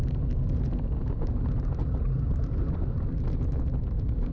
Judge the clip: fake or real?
real